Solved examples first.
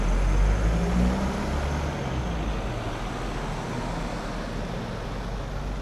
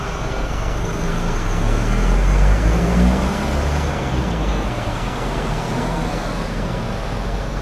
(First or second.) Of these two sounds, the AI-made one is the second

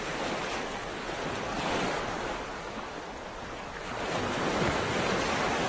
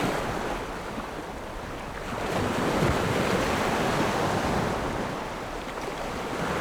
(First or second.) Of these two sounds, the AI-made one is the second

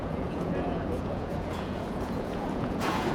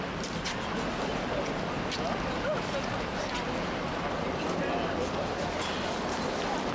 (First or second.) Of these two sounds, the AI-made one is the first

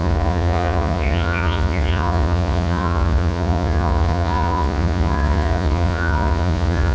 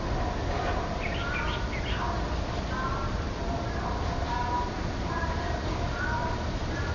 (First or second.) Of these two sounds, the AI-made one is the first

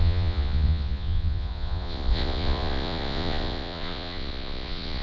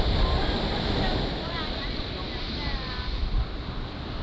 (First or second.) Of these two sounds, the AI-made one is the first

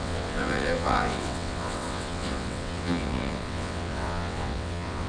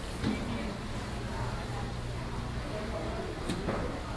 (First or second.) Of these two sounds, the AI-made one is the first